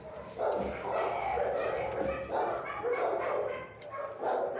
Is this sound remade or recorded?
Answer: recorded